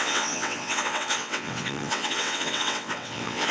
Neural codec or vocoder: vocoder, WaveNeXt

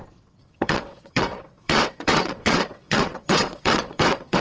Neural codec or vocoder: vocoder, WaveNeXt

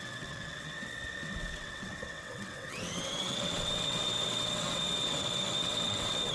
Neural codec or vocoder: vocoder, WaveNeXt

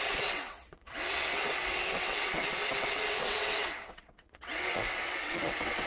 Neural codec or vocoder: vocoder, WaveNeXt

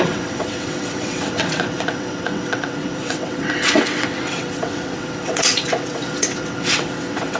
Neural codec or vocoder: vocoder, WaveNeXt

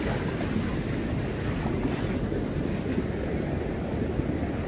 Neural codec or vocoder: none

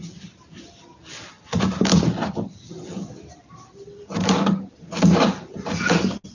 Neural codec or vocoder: none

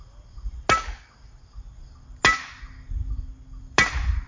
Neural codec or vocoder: none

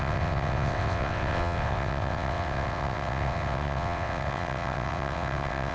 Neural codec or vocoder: vocoder, WaveNeXt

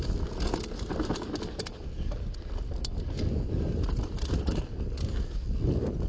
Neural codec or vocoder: none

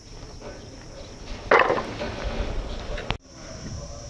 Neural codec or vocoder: none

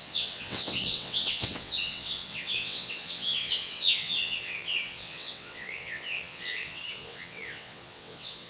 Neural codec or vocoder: vocoder, WaveNeXt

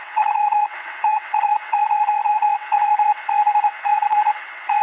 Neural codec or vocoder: vocoder, WaveNeXt